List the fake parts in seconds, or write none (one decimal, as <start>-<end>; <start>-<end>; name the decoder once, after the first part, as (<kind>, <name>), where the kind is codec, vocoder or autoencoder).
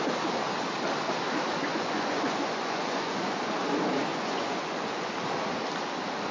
1.6-3.4 (vocoder, Vocos); 4.1-5.1